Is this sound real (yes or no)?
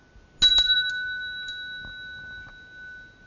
yes